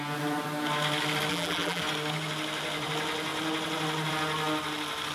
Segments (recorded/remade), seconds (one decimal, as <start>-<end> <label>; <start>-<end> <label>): 0.0-1.3 recorded; 1.3-1.8 remade; 1.8-5.1 recorded